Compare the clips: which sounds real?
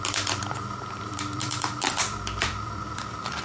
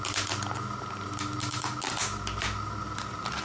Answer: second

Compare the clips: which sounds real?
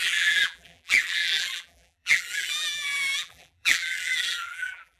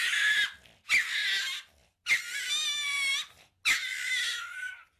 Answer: second